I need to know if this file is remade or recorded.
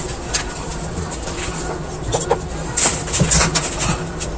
recorded